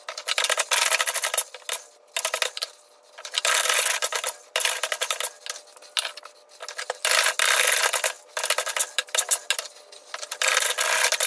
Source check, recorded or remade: recorded